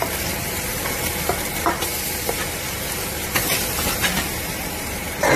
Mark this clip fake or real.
fake